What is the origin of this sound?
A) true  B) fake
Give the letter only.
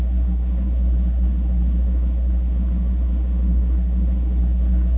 B